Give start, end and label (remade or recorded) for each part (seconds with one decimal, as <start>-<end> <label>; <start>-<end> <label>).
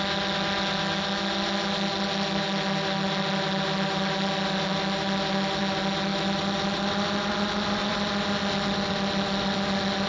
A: 0.0-10.1 recorded